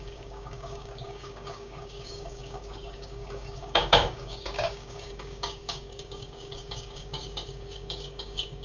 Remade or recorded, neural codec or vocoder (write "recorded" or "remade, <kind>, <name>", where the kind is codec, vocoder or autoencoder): remade, codec, DAC